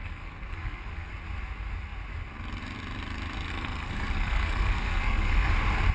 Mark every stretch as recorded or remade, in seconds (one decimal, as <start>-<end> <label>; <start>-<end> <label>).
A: 0.0-1.1 remade; 1.1-3.5 recorded; 3.5-5.5 remade; 5.5-5.9 recorded